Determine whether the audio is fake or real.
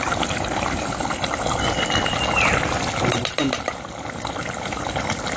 real